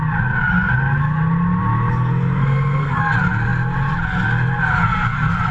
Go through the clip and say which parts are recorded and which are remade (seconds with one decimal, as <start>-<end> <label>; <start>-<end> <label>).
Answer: 0.0-2.4 recorded; 2.4-3.0 remade; 3.0-5.5 recorded